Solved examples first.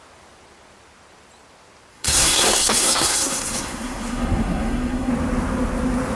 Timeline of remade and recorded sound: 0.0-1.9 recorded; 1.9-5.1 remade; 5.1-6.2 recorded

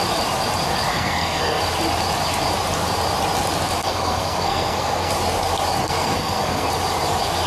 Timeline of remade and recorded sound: 0.0-0.9 recorded; 0.9-1.6 remade; 1.6-3.8 recorded; 3.8-5.1 remade; 5.1-5.8 recorded; 5.8-6.7 remade; 6.7-7.5 recorded

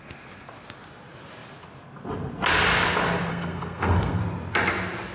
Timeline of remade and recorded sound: 0.0-3.3 recorded; 3.3-4.2 remade; 4.2-5.1 recorded